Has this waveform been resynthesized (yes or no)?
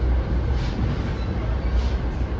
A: no